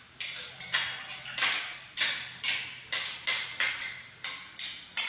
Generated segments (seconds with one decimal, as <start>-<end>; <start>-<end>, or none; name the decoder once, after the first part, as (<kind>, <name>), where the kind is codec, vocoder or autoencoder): none